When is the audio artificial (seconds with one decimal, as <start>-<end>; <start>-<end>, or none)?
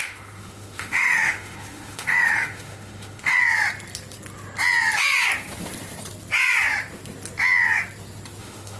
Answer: 0.0-3.4; 8.4-8.8